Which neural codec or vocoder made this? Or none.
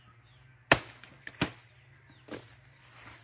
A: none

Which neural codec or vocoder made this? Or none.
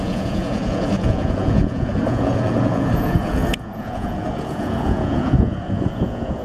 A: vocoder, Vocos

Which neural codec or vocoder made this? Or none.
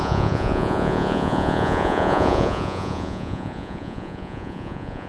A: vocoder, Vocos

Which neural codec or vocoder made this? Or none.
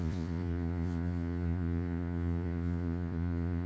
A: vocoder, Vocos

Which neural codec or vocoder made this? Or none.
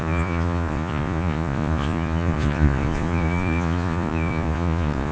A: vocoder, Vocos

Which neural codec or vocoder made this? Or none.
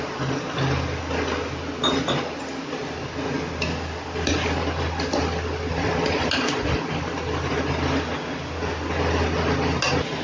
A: none